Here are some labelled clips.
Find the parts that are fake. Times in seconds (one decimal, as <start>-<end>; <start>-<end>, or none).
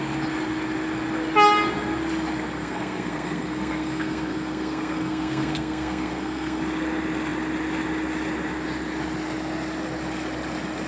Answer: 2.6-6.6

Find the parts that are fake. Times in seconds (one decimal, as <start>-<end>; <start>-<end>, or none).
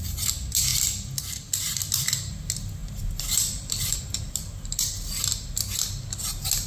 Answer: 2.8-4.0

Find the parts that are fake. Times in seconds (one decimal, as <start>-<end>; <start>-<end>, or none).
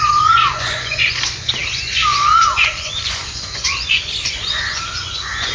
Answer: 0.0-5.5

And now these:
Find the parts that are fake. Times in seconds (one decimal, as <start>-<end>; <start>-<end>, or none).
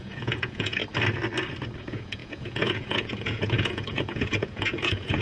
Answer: 0.0-0.8; 1.8-5.2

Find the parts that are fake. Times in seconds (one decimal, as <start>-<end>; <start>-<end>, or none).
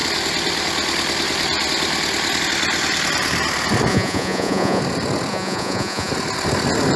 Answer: 3.9-4.8; 5.3-6.1